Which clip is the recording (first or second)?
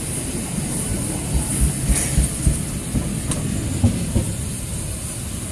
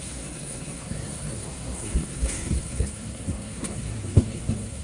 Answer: first